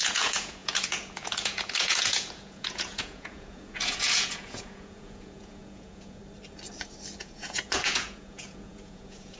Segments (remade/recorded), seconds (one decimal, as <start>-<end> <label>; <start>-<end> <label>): 0.0-6.2 remade; 6.2-7.2 recorded; 7.2-9.4 remade

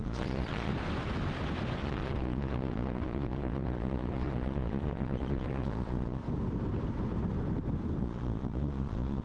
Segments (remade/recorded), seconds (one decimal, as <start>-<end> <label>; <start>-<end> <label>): 0.0-0.7 remade; 0.7-1.8 recorded; 1.8-6.2 remade; 6.2-8.0 recorded; 8.0-9.2 remade

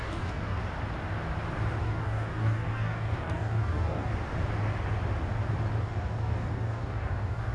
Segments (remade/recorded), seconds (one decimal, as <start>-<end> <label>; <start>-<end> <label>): 0.0-0.6 remade; 0.6-1.8 recorded; 1.8-4.1 remade; 4.1-5.8 recorded; 5.8-7.5 remade